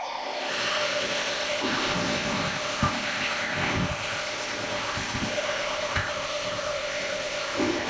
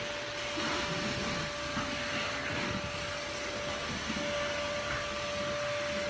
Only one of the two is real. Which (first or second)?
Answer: second